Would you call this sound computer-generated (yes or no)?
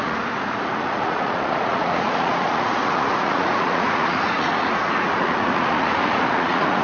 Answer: yes